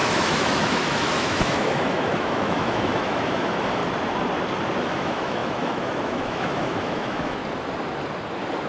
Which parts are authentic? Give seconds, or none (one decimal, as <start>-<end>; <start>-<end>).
3.8-4.8; 7.4-8.7